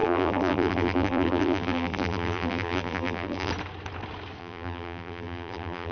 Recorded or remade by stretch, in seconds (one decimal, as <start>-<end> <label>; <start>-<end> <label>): 0.0-3.5 remade; 3.5-4.4 recorded; 4.4-5.9 remade